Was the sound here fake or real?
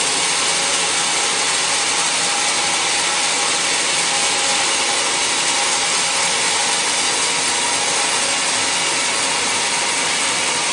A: real